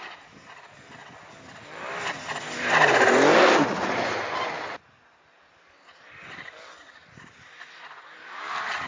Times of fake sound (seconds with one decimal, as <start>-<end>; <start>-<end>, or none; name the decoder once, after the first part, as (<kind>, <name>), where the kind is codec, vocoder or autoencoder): none